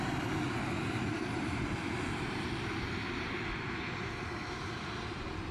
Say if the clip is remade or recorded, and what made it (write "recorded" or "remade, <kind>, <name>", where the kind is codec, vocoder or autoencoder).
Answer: recorded